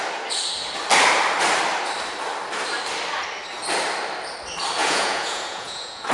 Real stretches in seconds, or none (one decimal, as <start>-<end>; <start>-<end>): 0.0-4.8